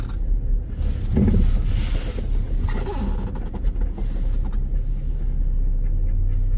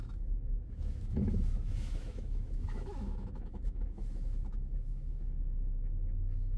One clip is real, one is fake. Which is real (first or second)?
first